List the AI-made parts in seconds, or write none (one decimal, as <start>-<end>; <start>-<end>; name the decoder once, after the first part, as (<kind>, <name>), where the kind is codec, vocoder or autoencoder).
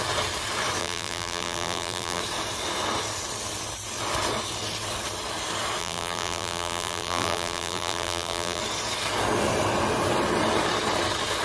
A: 0.8-2.2 (vocoder, BigVGAN v2); 5.8-8.6